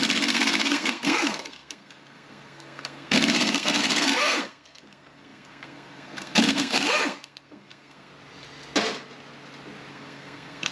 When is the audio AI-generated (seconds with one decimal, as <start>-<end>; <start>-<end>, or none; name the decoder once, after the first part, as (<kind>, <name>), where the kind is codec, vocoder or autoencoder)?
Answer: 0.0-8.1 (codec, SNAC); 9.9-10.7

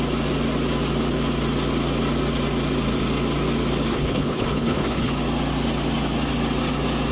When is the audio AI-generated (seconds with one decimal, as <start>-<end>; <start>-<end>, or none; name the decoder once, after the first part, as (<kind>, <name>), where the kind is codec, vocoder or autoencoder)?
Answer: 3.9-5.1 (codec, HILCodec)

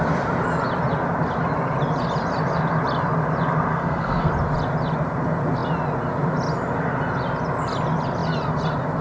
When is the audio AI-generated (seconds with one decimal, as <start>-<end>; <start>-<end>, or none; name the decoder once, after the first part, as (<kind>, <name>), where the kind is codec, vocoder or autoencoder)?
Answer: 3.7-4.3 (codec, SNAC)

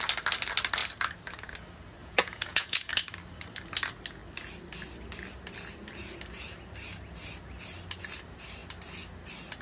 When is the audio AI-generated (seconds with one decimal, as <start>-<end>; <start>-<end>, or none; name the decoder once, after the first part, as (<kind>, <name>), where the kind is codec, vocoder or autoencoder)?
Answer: 2.0-2.9 (vocoder, Vocos)

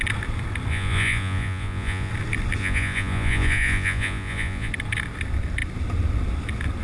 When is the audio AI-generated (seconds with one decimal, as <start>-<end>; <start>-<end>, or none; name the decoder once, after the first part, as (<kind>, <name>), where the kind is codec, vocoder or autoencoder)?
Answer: 0.7-2.1 (vocoder, Vocos); 2.6-4.7